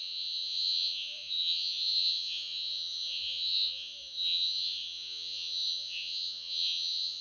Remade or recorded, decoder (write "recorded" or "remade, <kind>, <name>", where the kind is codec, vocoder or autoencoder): remade, vocoder, Vocos